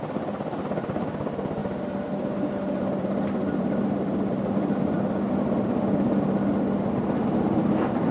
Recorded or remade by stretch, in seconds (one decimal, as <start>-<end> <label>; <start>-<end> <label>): 0.0-1.6 recorded; 1.6-5.1 remade; 5.1-8.1 recorded